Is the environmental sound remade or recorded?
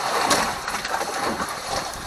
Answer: remade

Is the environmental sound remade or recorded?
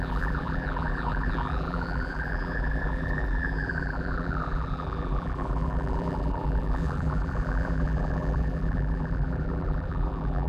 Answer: remade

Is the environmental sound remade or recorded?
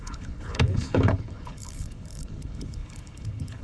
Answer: remade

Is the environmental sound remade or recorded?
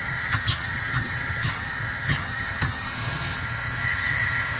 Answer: remade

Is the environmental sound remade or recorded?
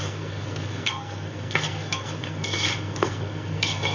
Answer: remade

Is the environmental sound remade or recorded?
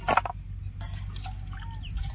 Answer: recorded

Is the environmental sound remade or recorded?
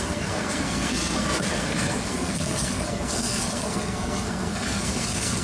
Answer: remade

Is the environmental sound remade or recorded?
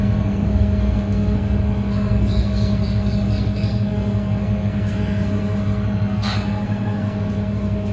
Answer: remade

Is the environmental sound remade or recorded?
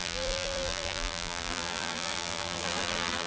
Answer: remade